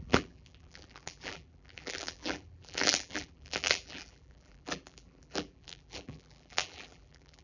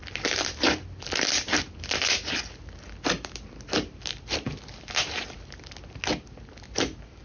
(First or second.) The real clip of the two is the second